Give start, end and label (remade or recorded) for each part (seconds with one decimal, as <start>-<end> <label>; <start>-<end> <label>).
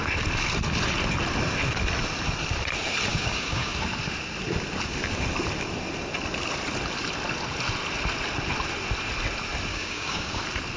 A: 0.0-3.1 recorded; 3.1-3.7 remade; 3.7-9.7 recorded; 9.7-10.4 remade; 10.4-10.8 recorded